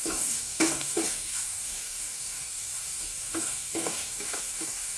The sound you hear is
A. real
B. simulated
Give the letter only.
B